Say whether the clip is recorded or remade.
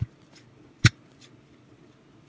recorded